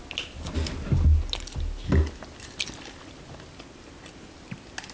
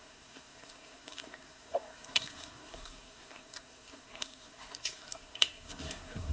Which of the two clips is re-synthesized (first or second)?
second